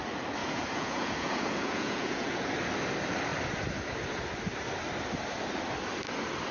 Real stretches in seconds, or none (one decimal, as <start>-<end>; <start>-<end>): 0.0-0.4; 2.5-6.5